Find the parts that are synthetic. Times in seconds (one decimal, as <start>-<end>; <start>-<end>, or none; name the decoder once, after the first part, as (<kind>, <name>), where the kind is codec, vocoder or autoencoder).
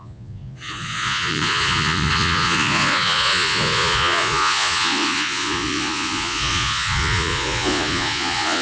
0.0-8.6 (vocoder, Vocos)